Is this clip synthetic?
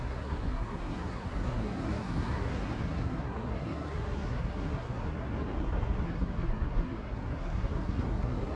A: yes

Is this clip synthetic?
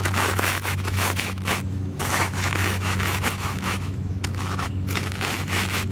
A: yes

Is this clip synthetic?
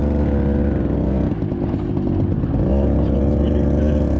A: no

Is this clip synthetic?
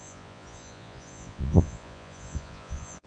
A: yes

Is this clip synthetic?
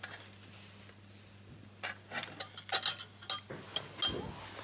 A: no